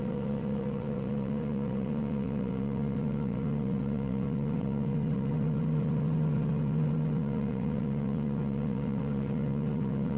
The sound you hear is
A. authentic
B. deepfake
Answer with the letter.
B